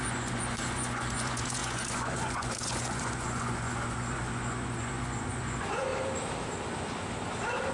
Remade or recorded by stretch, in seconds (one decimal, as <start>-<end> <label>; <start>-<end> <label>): 0.0-5.9 remade; 5.9-7.7 recorded